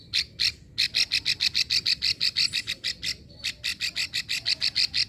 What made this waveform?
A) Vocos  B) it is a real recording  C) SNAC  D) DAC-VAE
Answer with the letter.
B